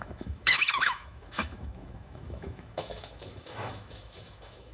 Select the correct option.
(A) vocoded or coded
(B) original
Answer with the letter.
A